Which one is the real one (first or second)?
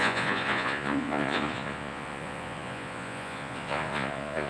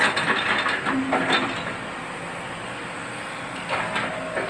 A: second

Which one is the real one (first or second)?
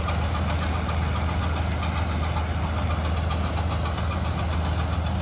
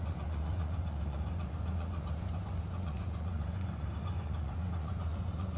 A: first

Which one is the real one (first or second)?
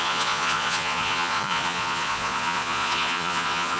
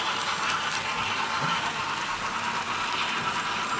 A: second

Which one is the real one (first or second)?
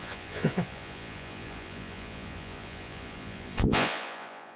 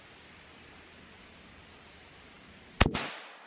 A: second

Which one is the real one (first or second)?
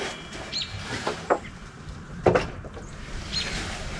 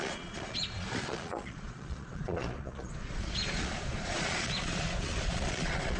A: first